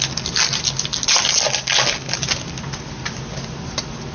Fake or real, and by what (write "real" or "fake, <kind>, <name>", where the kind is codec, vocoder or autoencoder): real